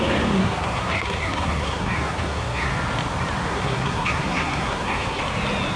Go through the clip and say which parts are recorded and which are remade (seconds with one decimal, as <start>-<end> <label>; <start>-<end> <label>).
0.0-0.4 recorded; 0.4-2.7 remade; 2.7-3.5 recorded; 3.5-5.2 remade; 5.2-5.8 recorded